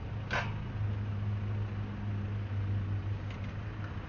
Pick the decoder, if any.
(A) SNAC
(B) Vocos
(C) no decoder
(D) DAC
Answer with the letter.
C